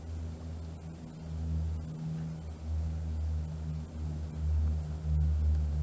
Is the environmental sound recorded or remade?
recorded